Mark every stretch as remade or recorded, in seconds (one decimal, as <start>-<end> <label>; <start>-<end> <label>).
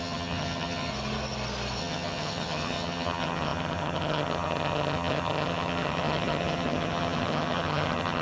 0.0-0.9 remade; 0.9-1.8 recorded; 1.8-8.2 remade